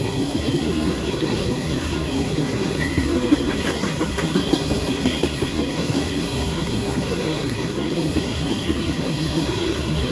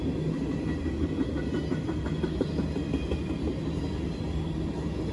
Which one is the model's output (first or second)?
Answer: first